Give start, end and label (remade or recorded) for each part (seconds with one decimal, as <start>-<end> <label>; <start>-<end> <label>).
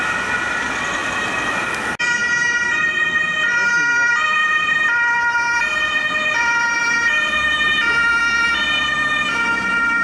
0.0-10.0 recorded